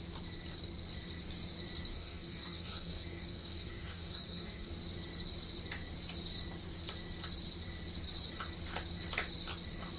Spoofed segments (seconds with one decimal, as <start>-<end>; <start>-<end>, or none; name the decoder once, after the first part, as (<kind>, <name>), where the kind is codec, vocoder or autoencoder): 1.9-4.7 (codec, SNAC)